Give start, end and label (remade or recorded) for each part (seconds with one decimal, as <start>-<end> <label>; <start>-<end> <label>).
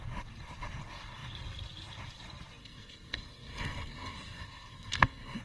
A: 0.0-2.6 recorded; 2.6-5.4 remade